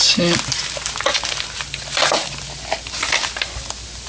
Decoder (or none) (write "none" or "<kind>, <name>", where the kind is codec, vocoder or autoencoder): none